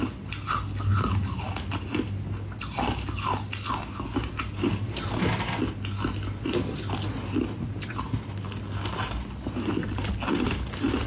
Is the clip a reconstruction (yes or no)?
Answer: no